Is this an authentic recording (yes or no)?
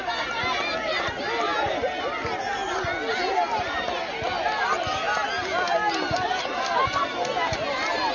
yes